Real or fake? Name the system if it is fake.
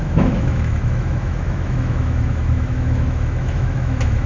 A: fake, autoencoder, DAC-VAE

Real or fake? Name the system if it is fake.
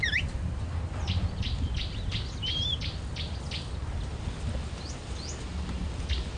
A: real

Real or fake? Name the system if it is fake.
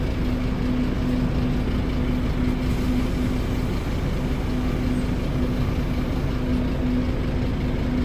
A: real